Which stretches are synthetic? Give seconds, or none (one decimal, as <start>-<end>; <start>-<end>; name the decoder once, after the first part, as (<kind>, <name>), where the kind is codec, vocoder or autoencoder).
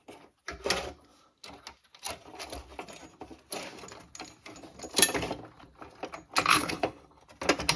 6.5-7.2 (codec, HILCodec)